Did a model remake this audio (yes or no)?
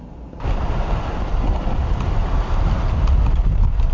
no